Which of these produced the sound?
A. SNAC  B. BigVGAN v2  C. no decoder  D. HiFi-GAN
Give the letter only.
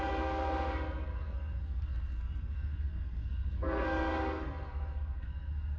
A